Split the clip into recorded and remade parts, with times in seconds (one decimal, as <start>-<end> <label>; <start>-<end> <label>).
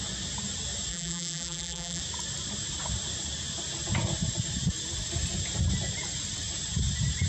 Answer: 0.0-0.9 recorded; 0.9-2.0 remade; 2.0-7.3 recorded